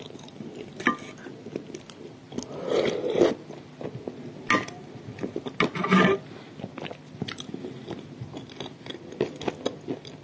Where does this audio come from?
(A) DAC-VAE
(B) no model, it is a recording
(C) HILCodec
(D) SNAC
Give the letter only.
B